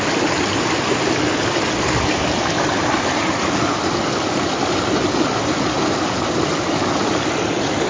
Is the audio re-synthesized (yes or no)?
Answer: no